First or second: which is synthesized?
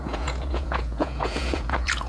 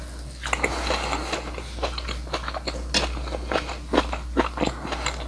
first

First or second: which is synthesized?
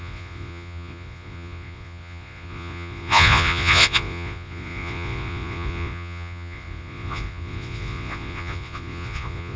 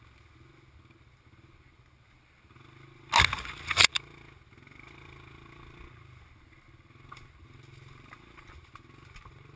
first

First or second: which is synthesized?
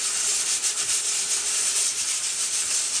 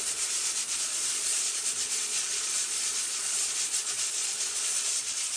second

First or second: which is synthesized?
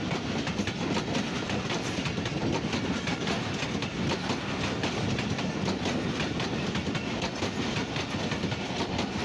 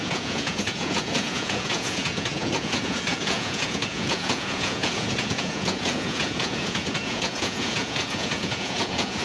second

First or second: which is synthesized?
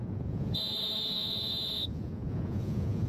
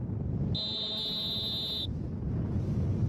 first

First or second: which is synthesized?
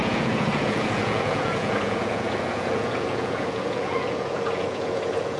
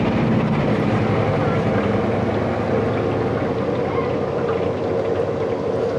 first